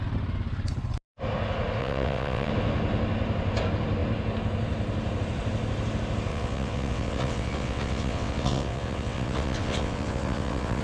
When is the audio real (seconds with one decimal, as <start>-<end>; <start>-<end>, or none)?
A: 0.0-1.8; 2.5-6.3